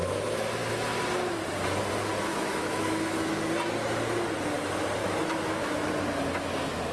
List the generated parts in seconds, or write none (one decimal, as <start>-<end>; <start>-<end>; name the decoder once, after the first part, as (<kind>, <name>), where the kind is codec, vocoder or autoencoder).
2.3-3.5 (autoencoder, DAC-VAE); 5.0-5.9